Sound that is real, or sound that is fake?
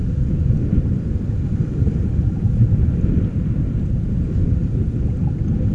fake